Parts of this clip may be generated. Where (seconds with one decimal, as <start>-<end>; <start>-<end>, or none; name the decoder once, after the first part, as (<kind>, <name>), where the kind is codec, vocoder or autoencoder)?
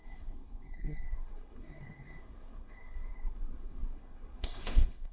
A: 0.0-5.1 (codec, SNAC)